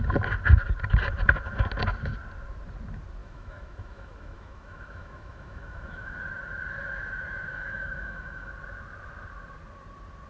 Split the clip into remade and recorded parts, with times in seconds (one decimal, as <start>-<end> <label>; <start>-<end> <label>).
0.0-3.2 recorded; 3.2-6.2 remade; 6.2-7.5 recorded; 7.5-8.5 remade; 8.5-10.3 recorded